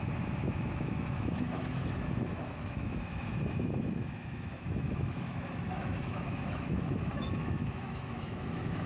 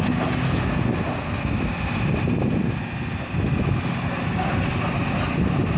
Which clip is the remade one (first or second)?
first